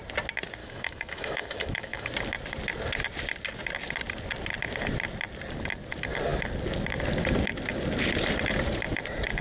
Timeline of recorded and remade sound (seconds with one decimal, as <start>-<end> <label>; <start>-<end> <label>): 0.0-0.6 recorded; 0.6-2.1 remade; 2.1-9.4 recorded